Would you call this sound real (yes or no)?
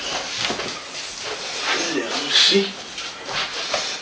yes